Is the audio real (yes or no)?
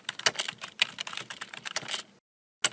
yes